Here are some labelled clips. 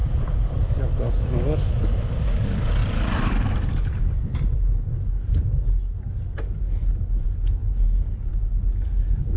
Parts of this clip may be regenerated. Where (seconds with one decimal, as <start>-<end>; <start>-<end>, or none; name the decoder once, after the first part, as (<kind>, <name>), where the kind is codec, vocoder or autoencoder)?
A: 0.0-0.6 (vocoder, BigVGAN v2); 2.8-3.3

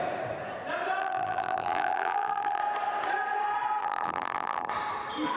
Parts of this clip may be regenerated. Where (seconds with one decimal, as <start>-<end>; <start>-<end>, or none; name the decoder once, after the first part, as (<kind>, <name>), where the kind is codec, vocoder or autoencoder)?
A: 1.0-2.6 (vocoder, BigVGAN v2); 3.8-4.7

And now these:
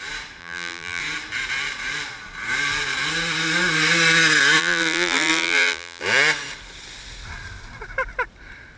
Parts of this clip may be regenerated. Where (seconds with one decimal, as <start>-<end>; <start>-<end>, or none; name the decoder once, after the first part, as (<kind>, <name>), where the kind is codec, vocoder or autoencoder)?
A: 0.4-1.0 (vocoder, BigVGAN v2); 4.6-6.0